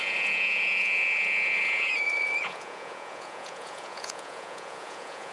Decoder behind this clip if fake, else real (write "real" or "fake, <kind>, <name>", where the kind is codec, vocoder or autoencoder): fake, vocoder, Vocos